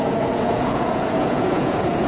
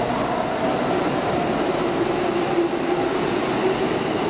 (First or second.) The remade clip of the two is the first